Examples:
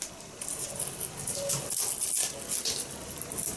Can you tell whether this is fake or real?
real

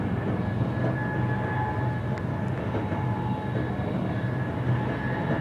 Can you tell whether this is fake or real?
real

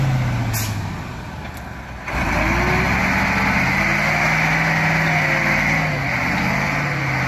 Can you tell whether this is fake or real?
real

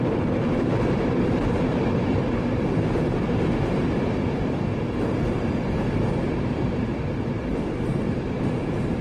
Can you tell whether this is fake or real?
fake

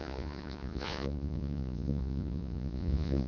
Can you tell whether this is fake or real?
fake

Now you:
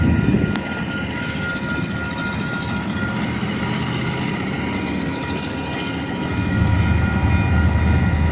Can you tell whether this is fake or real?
real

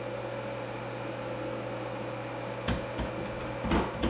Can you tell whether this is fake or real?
real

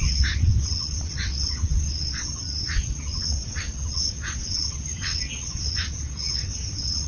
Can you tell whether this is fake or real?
fake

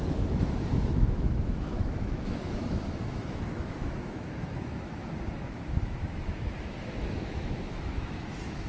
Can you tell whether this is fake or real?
fake